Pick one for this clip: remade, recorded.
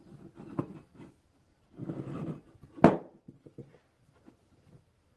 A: recorded